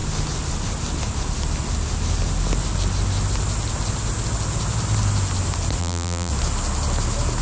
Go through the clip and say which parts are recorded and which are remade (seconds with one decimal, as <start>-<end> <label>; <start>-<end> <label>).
0.0-5.8 recorded; 5.8-6.3 remade; 6.3-7.4 recorded